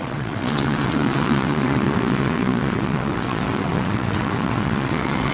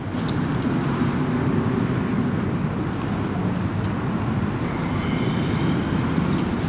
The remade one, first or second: first